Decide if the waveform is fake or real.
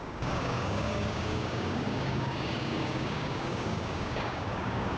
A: fake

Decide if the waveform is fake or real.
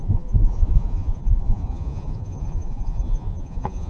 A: fake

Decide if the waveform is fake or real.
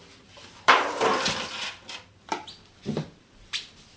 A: fake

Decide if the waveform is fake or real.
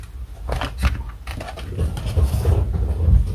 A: real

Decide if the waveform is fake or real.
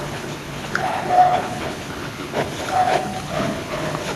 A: fake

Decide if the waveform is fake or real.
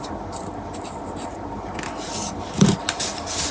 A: real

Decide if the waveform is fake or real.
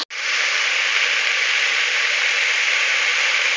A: real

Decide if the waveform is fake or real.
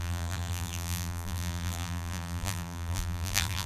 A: fake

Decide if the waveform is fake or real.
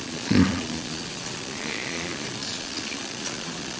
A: fake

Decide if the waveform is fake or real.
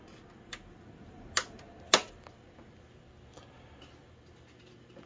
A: real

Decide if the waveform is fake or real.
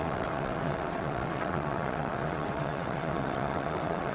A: fake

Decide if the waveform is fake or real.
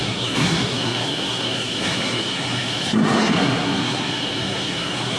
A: fake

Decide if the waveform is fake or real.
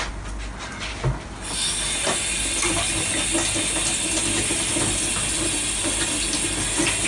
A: real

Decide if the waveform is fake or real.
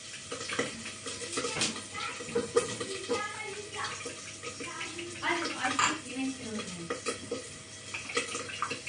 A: real